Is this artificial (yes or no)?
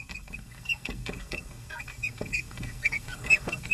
yes